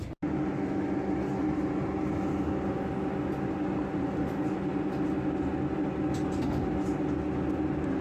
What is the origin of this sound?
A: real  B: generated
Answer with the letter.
A